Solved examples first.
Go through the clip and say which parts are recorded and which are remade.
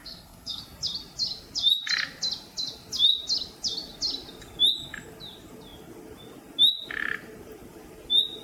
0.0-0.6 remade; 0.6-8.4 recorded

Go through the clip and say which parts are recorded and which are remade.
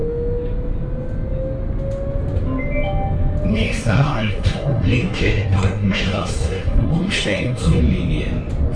0.0-3.5 recorded; 3.5-7.8 remade; 7.8-8.8 recorded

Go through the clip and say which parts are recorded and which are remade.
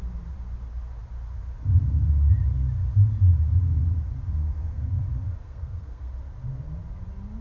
0.0-4.4 recorded; 4.4-5.0 remade; 5.0-5.4 recorded; 5.4-6.1 remade; 6.1-7.4 recorded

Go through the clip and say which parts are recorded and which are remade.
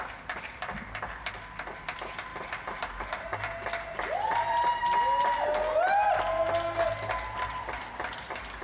0.0-8.6 recorded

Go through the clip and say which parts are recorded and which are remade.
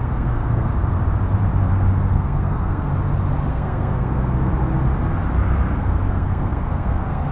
0.0-0.7 remade; 0.7-2.1 recorded; 2.1-2.9 remade; 2.9-3.5 recorded; 3.5-4.5 remade; 4.5-5.8 recorded; 5.8-7.3 remade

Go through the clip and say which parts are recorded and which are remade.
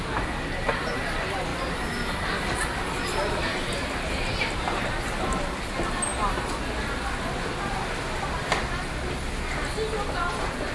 0.0-10.7 recorded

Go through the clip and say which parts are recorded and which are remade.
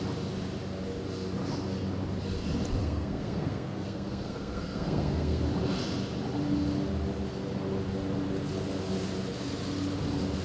0.0-2.8 recorded; 2.8-5.4 remade; 5.4-10.4 recorded